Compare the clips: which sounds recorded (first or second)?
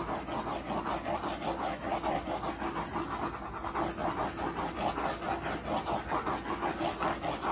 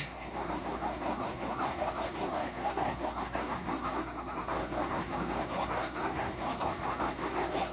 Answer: first